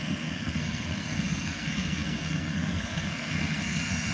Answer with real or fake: fake